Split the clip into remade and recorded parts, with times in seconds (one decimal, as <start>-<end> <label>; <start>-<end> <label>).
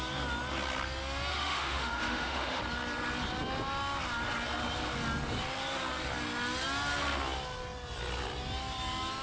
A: 0.0-1.3 recorded; 1.3-2.6 remade; 2.6-9.2 recorded